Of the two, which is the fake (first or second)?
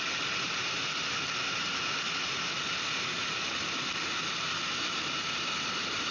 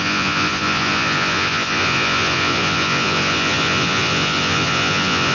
second